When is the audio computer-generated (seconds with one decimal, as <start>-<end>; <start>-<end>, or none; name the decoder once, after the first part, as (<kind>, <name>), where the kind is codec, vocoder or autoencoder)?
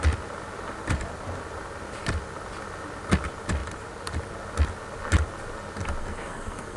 6.0-6.8 (codec, SNAC)